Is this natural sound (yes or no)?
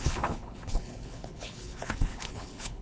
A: no